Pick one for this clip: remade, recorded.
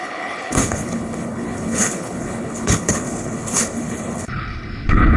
remade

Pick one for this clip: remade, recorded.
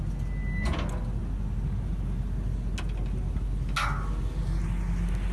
recorded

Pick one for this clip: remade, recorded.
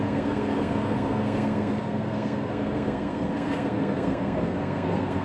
remade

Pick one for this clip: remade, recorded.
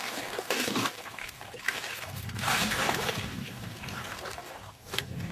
remade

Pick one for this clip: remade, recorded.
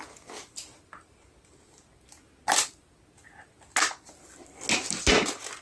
recorded